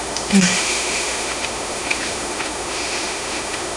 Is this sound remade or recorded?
remade